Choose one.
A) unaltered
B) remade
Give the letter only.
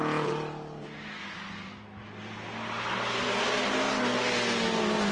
A